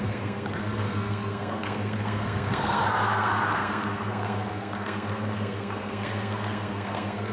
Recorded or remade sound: remade